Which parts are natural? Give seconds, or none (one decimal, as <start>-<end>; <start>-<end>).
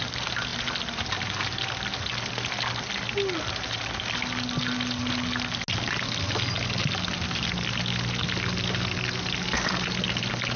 0.0-10.6